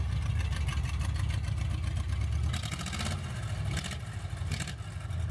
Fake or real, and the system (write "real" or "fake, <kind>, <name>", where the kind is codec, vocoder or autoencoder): real